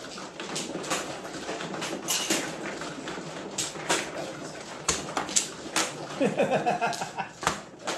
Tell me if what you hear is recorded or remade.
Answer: recorded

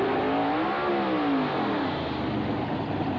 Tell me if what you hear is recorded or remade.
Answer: recorded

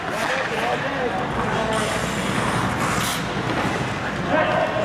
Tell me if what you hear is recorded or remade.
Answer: recorded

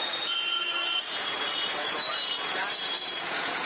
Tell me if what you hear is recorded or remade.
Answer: remade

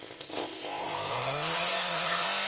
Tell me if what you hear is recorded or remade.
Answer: remade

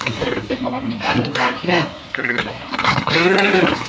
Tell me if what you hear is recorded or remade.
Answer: remade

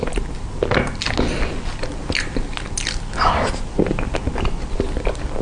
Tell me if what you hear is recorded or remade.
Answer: recorded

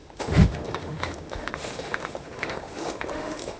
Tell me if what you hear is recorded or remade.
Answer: remade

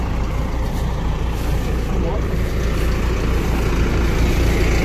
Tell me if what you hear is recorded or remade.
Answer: recorded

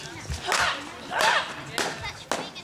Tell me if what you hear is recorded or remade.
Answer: recorded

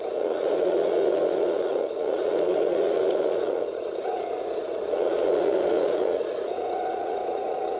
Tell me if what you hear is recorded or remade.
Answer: remade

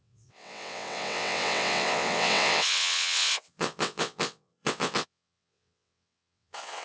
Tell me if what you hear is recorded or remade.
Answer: remade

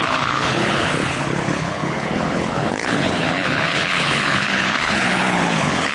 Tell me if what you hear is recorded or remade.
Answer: remade